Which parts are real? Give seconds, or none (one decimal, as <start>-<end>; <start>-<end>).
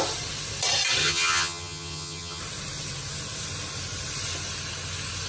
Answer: 0.0-1.0; 2.4-5.3